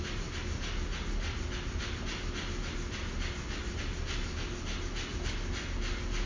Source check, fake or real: real